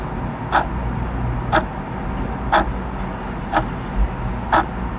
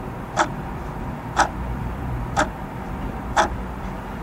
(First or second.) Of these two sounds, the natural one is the first